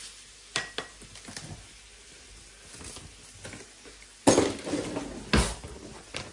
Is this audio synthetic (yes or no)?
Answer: no